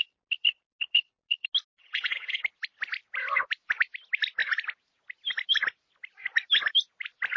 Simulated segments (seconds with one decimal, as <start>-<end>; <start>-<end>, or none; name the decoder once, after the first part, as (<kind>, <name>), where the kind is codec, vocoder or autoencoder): 1.8-2.4 (vocoder, WaveNeXt)